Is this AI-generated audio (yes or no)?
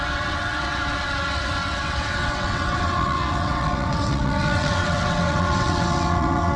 yes